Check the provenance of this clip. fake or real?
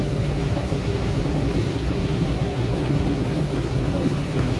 fake